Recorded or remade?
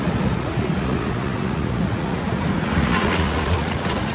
remade